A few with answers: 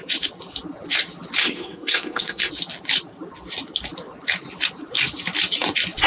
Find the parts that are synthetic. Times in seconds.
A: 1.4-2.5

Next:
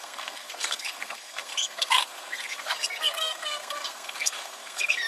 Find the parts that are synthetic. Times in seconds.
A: 0.0-5.1

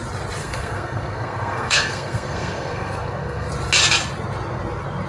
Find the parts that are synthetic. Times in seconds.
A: 0.4-3.5

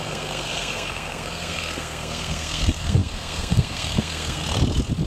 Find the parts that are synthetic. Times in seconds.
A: 0.0-4.4

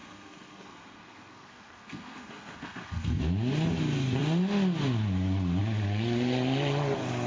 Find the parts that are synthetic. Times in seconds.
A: 0.0-3.2